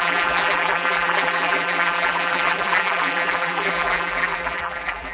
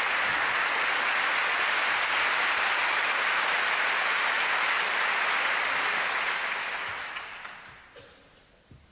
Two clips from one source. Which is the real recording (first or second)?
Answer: second